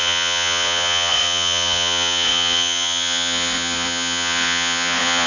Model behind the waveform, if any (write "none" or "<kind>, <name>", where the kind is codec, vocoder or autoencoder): vocoder, Vocos